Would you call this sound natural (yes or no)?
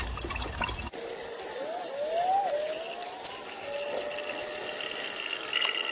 yes